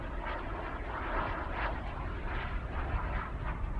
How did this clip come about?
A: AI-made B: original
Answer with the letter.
B